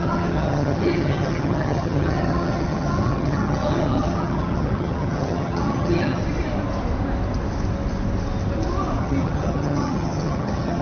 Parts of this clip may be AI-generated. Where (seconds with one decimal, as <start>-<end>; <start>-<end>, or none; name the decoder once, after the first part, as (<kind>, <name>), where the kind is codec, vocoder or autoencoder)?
0.0-6.2 (vocoder, HiFi-GAN); 9.0-10.8